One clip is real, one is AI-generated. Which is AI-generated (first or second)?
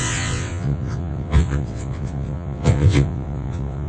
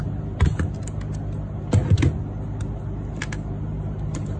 first